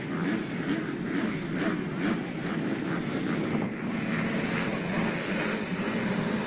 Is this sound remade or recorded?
recorded